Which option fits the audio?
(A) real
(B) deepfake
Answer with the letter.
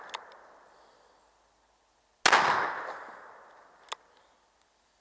A